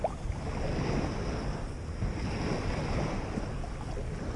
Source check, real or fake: real